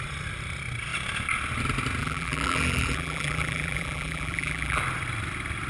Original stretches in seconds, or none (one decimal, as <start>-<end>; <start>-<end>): 0.0-2.0; 4.8-5.7